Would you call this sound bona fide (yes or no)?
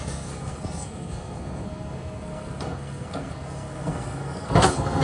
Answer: no